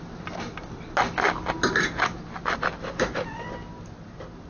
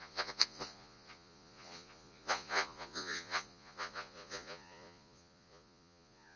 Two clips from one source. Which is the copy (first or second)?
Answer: second